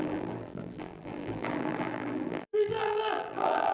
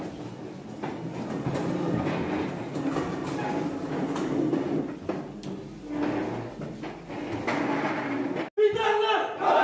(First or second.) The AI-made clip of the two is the first